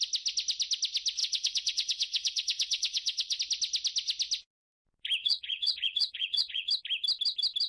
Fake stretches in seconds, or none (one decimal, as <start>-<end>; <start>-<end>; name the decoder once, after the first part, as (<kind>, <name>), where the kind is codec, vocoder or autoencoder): 1.2-3.4 (vocoder, Vocos); 5.2-6.7